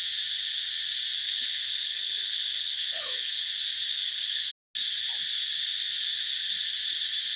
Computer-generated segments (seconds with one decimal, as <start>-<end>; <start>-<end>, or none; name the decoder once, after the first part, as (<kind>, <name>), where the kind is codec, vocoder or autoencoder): 1.2-3.5 (codec, HILCodec); 3.9-4.5